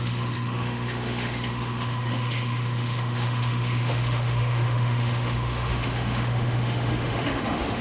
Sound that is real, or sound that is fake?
fake